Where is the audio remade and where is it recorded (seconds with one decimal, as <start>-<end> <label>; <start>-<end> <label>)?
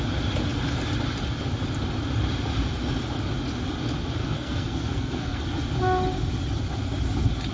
0.0-4.2 recorded; 4.2-5.4 remade; 5.4-7.5 recorded